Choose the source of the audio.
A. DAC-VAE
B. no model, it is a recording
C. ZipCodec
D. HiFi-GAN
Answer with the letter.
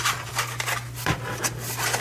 B